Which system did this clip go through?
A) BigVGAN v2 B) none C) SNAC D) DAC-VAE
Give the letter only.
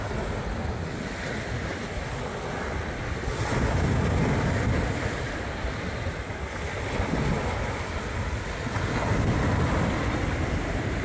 B